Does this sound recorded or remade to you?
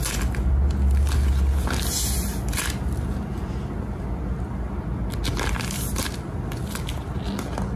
recorded